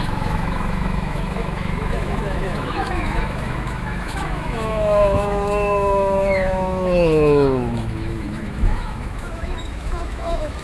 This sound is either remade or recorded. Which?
remade